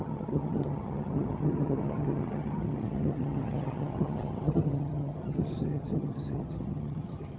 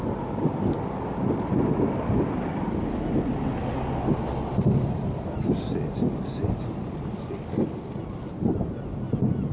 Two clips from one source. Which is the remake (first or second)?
first